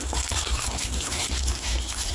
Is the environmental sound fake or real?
fake